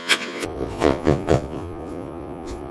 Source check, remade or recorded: remade